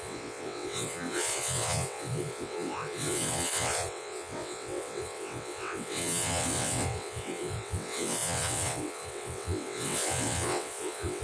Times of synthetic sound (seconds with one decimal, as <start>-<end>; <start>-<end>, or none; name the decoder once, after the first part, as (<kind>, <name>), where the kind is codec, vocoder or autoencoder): 0.0-11.2 (vocoder, WaveNeXt)